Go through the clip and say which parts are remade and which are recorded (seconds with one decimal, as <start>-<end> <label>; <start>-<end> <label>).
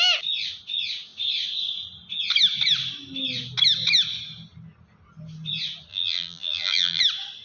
0.0-5.9 recorded; 5.9-7.0 remade; 7.0-7.4 recorded